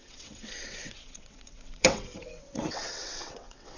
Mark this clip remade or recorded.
remade